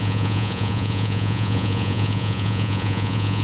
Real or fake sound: fake